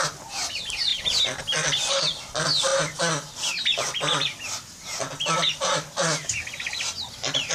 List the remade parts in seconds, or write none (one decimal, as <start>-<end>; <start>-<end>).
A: none